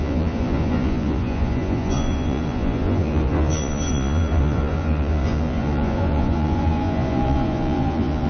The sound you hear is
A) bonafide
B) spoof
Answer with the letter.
B